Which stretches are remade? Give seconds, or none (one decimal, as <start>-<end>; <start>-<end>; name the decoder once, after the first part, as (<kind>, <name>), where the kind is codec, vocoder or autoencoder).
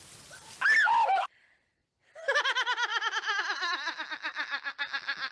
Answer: 1.8-2.4 (vocoder, BigVGAN v2)